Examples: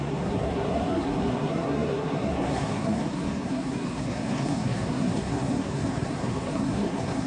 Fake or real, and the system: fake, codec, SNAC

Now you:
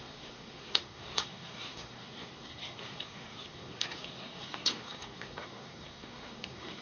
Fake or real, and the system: fake, codec, SNAC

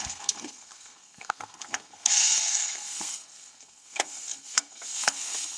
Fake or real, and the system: fake, codec, SNAC